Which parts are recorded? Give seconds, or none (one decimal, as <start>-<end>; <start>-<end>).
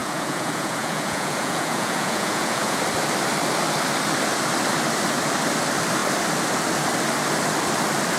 2.8-8.2